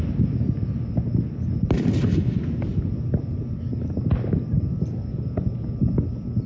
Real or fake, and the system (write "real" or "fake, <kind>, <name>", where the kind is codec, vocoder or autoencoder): real